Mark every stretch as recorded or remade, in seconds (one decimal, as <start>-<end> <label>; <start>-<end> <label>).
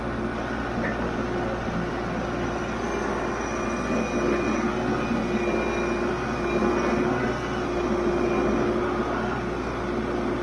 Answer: 0.0-10.4 recorded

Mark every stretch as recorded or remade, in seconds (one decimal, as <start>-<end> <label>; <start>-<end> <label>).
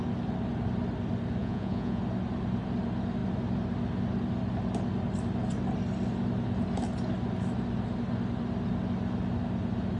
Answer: 0.0-1.4 recorded; 1.4-2.0 remade; 2.0-10.0 recorded